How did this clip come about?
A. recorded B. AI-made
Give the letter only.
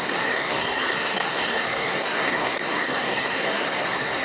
B